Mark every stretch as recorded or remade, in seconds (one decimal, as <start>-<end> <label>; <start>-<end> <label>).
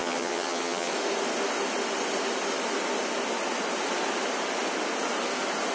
0.0-0.9 remade; 0.9-5.7 recorded